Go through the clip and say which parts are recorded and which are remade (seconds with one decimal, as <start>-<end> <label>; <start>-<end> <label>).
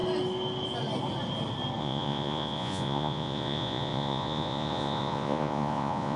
0.0-1.8 recorded; 1.8-6.2 remade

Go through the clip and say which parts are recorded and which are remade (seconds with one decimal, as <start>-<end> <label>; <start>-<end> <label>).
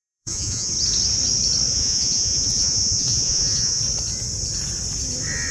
0.0-0.7 remade; 0.7-1.7 recorded; 1.7-3.8 remade; 3.8-5.5 recorded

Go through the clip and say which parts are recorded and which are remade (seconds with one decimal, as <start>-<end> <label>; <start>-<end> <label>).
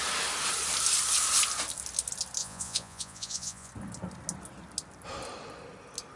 0.0-2.4 recorded; 2.4-3.7 remade; 3.7-6.2 recorded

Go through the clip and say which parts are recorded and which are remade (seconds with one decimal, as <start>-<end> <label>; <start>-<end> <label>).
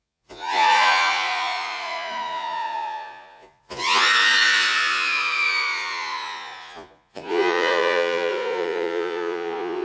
0.0-9.8 remade